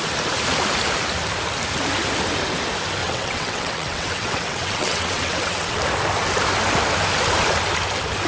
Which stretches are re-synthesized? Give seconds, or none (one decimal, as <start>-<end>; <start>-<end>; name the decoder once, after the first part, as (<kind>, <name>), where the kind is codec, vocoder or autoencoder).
3.0-5.8 (vocoder, WaveNeXt)